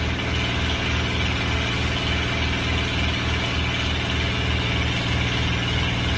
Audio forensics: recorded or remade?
recorded